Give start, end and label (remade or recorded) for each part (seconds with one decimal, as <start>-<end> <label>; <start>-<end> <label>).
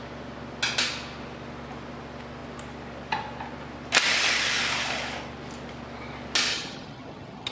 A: 0.0-6.5 recorded; 6.5-7.5 remade